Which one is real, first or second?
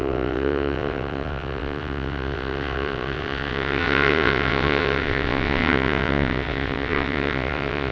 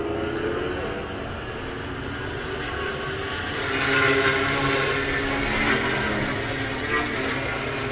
second